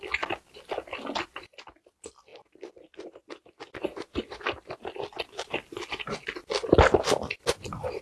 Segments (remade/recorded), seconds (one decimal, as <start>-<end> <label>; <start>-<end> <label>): 0.0-8.0 recorded